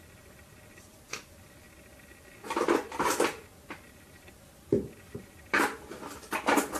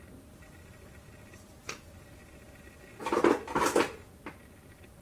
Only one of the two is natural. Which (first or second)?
second